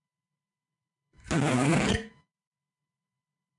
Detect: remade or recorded remade